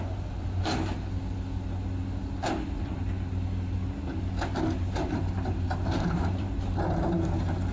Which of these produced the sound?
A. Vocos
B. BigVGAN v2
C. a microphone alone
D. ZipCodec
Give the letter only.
C